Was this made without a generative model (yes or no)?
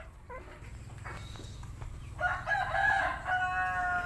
yes